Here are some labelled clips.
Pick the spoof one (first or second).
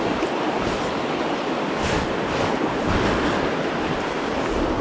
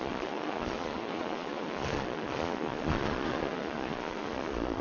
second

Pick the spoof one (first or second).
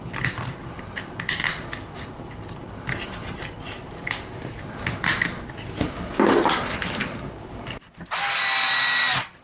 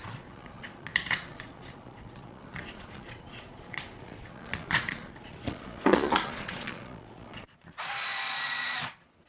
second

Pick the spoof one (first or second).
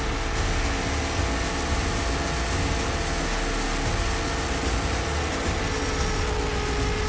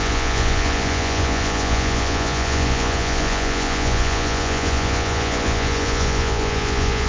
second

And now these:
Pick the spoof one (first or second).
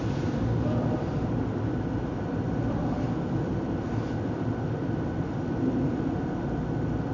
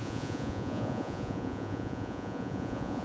second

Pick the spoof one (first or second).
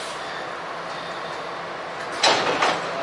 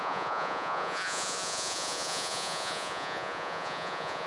second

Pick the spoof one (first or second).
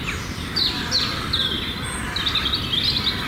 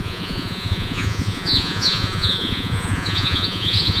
second